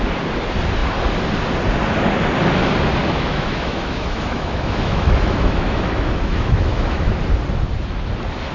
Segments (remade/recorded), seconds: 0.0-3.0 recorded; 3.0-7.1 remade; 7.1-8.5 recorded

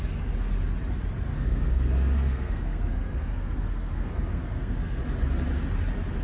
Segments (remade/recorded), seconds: 0.0-1.3 recorded; 1.3-5.0 remade; 5.0-6.2 recorded

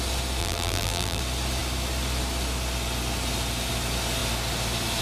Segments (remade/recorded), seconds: 0.0-0.4 recorded; 0.4-1.2 remade; 1.2-5.0 recorded

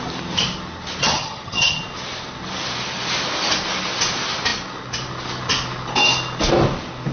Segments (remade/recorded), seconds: 0.0-1.0 recorded; 1.0-1.8 remade; 1.8-7.1 recorded

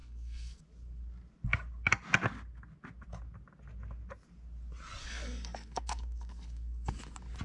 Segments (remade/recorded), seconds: 0.0-0.6 remade; 0.6-5.0 recorded; 5.0-7.0 remade; 7.0-7.4 recorded

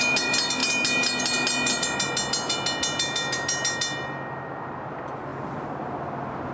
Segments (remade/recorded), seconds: 0.0-6.5 recorded

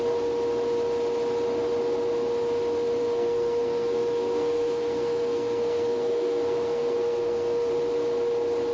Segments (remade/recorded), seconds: 0.0-3.0 recorded; 3.0-7.7 remade; 7.7-8.7 recorded